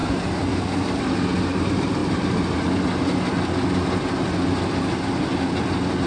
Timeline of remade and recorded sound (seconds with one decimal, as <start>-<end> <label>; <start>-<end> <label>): 0.0-1.0 remade; 1.0-2.0 recorded; 2.0-2.6 remade; 2.6-6.1 recorded